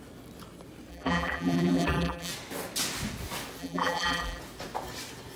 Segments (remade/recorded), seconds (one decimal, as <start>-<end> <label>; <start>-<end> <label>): 0.0-0.9 recorded; 0.9-2.3 remade; 2.3-3.6 recorded; 3.6-4.4 remade; 4.4-5.4 recorded